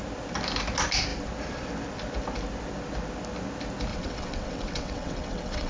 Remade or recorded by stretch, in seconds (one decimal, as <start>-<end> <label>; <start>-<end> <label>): 0.0-3.9 recorded; 3.9-5.7 remade